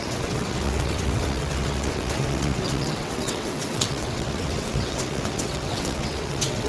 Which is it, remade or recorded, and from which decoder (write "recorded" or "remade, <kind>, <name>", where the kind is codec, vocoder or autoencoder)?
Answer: remade, vocoder, WaveNeXt